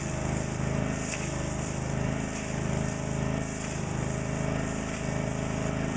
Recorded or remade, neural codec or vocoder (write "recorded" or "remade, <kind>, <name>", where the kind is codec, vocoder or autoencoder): remade, vocoder, BigVGAN v2